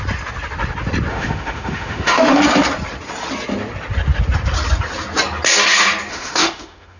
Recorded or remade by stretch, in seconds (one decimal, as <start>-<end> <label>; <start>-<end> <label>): 0.0-1.1 recorded; 1.1-2.4 remade; 2.4-6.1 recorded; 6.1-7.0 remade